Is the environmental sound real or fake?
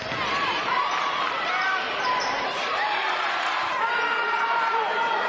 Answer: fake